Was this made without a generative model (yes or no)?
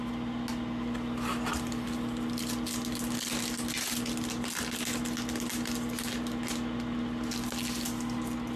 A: yes